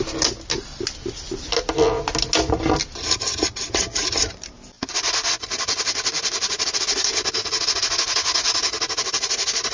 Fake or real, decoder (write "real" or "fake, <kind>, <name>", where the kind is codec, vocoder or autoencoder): real